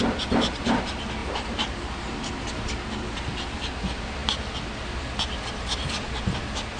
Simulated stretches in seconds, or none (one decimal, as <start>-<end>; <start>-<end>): 1.2-2.3